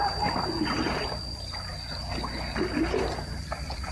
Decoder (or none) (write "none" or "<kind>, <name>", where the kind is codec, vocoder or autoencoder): none